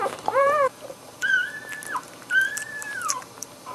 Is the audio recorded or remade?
remade